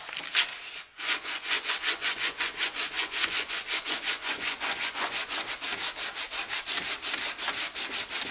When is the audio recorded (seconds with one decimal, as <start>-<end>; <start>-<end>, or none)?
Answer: 0.0-0.5; 5.5-8.3